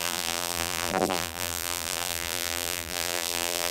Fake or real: fake